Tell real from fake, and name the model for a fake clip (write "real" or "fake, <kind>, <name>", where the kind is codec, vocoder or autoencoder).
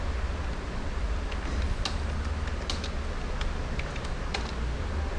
real